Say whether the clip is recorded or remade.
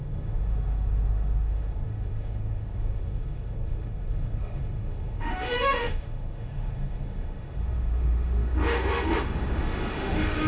remade